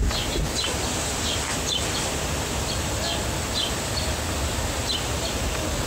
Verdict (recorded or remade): recorded